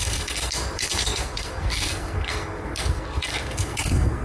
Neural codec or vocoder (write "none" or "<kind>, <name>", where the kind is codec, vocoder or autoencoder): codec, SNAC